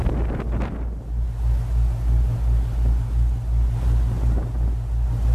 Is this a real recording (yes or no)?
yes